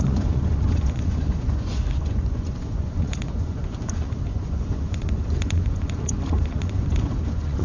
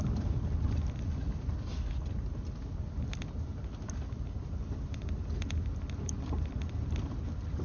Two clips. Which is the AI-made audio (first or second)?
first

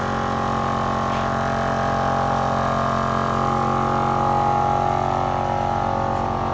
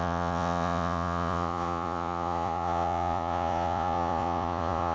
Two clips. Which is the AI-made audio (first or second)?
second